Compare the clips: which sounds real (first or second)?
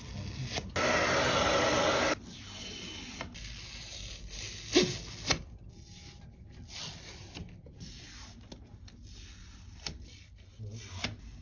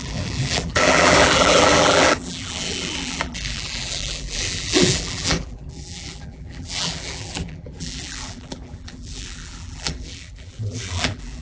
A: first